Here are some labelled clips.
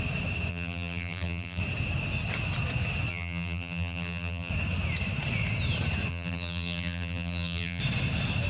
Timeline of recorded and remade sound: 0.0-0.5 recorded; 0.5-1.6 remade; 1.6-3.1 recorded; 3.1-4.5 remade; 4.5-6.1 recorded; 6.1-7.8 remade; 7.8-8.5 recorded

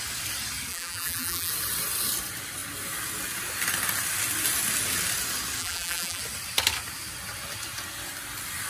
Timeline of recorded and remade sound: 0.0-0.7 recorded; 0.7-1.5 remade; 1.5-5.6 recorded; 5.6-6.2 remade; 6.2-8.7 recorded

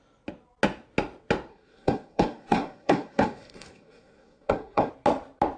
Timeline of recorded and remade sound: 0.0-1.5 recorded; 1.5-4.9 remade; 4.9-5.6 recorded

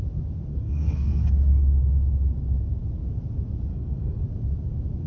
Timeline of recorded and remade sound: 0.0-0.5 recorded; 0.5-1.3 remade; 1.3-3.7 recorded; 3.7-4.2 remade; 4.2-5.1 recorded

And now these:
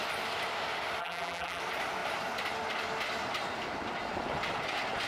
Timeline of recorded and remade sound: 0.0-1.0 recorded; 1.0-1.6 remade; 1.6-5.1 recorded

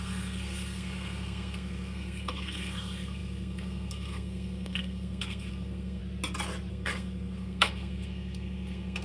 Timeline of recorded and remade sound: 0.0-6.0 remade; 6.0-6.7 recorded; 6.7-9.0 remade